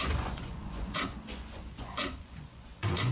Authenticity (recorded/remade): remade